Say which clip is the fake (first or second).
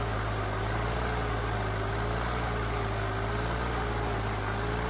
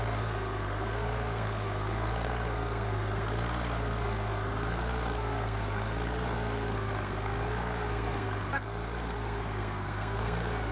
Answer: second